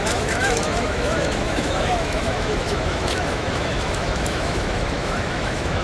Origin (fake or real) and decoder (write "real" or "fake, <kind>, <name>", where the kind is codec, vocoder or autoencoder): fake, autoencoder, DAC-VAE